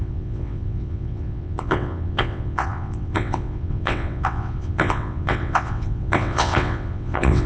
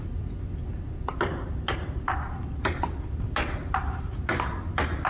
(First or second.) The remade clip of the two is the first